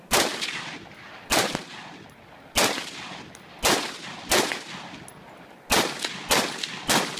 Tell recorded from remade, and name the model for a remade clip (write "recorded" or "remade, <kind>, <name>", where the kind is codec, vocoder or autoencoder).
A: recorded